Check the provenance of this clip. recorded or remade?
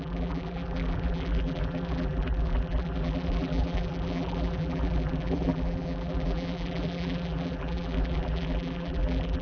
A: remade